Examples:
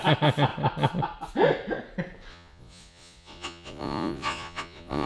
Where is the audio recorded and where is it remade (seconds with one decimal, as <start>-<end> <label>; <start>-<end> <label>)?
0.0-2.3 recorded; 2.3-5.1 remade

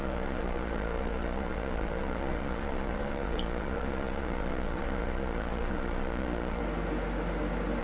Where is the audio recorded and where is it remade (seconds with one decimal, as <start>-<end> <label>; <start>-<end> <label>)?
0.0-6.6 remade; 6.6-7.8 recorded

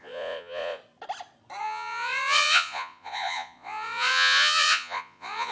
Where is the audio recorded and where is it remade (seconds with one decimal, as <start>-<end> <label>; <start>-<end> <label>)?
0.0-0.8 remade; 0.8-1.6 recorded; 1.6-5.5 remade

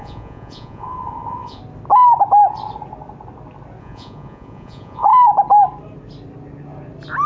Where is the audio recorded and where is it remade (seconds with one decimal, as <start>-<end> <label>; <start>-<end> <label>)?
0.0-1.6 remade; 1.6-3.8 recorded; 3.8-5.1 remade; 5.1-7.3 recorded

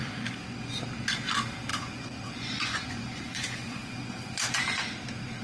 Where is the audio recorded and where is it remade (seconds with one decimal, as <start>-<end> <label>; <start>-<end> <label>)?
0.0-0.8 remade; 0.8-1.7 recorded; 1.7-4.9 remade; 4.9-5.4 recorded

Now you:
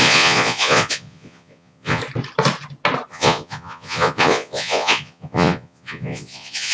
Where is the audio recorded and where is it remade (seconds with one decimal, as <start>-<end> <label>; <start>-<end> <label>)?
0.0-2.0 remade; 2.0-3.1 recorded; 3.1-6.7 remade

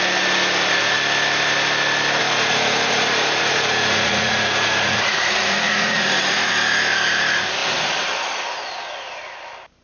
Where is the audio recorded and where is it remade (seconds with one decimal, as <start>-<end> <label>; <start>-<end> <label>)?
0.0-2.2 recorded; 2.2-6.5 remade; 6.5-9.8 recorded

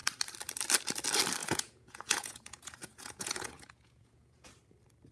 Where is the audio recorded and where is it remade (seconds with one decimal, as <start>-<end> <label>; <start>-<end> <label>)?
0.0-1.4 recorded; 1.4-4.5 remade; 4.5-5.1 recorded